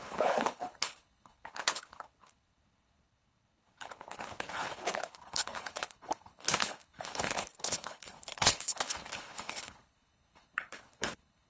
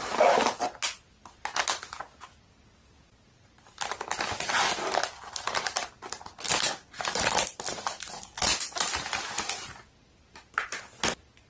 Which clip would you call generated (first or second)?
first